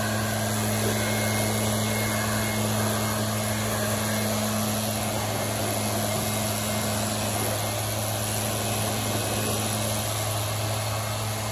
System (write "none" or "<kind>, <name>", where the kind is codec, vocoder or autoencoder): none